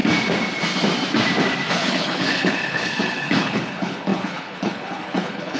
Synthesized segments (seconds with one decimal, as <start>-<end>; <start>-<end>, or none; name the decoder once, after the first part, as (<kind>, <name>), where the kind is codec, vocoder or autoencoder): 1.7-5.6 (codec, HILCodec)